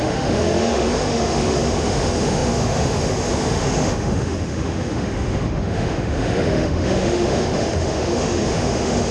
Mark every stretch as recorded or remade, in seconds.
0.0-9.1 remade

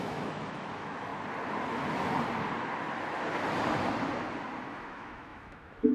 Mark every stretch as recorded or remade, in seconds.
0.0-1.1 remade; 1.1-4.6 recorded; 4.6-5.9 remade

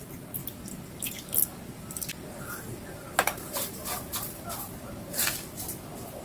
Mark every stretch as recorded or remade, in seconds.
0.0-6.2 recorded

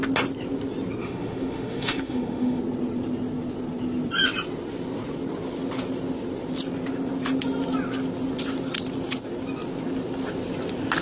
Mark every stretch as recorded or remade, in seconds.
0.0-1.0 recorded; 1.0-2.6 remade; 2.6-11.0 recorded

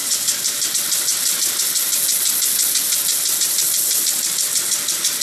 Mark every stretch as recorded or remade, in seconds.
0.0-5.2 recorded